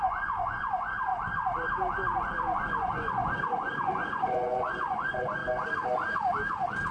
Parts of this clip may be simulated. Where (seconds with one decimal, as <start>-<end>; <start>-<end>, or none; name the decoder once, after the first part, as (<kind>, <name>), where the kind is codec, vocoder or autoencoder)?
0.0-1.1 (vocoder, Vocos); 2.2-5.4